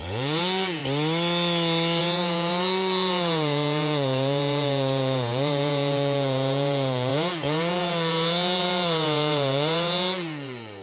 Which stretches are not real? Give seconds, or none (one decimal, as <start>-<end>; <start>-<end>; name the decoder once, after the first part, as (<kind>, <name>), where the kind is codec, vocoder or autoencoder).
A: 0.0-0.8 (vocoder, Vocos); 2.0-10.8